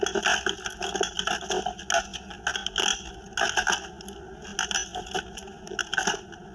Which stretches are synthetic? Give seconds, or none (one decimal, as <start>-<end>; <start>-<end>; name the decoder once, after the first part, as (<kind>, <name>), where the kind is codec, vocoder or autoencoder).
none